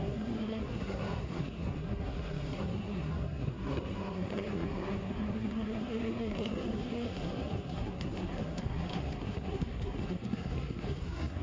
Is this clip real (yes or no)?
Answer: no